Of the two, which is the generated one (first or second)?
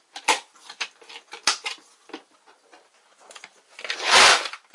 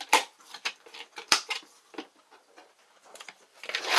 second